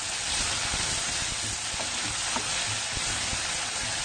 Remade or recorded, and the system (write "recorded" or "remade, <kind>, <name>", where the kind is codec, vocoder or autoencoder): recorded